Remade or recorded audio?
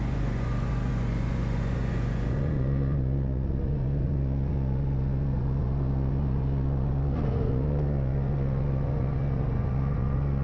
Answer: remade